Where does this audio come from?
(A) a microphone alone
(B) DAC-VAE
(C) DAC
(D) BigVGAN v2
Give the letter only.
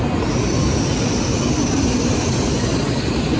A